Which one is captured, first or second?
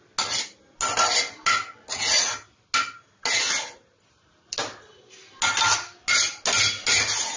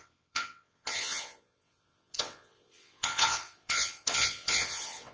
first